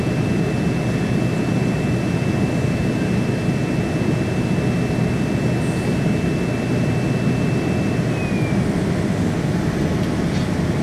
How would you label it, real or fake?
real